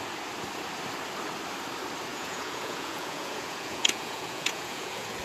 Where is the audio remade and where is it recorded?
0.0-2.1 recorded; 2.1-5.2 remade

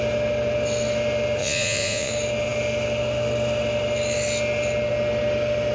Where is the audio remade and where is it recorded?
0.0-1.4 recorded; 1.4-2.1 remade; 2.1-5.7 recorded

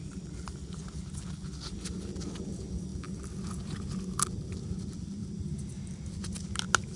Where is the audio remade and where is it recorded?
0.0-7.0 recorded

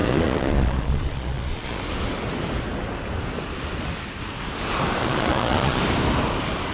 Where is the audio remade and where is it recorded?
0.0-1.8 remade; 1.8-5.0 recorded; 5.0-5.8 remade; 5.8-6.7 recorded

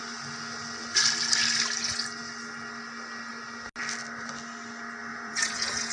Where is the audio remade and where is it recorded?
0.0-5.1 recorded; 5.1-5.9 remade

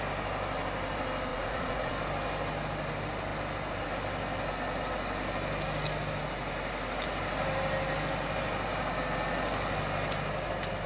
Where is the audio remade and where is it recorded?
0.0-1.3 recorded; 1.3-1.9 remade; 1.9-10.9 recorded

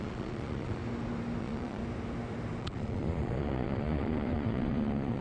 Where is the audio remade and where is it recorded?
0.0-0.8 remade; 0.8-1.4 recorded; 1.4-1.8 remade; 1.8-2.6 recorded; 2.6-5.2 remade